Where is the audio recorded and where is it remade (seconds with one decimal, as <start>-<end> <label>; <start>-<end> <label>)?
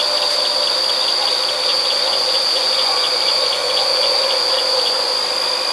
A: 0.0-1.7 recorded; 1.7-5.1 remade; 5.1-5.7 recorded